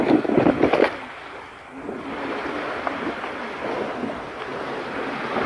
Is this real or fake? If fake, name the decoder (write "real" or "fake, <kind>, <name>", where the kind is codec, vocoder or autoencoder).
real